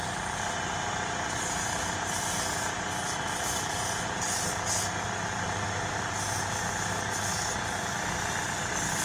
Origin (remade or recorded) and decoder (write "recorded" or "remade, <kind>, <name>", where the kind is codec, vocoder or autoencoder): recorded